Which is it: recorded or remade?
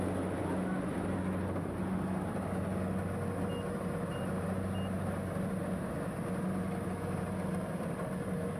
recorded